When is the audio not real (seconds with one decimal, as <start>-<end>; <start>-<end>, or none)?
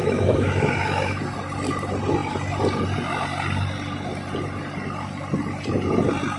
0.0-1.2